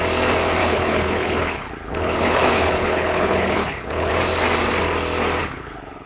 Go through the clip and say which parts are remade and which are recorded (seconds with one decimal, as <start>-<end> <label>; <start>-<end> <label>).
0.0-0.6 recorded; 0.6-4.1 remade; 4.1-5.4 recorded; 5.4-6.1 remade